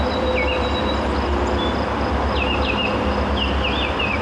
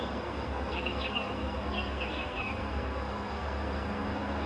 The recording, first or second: first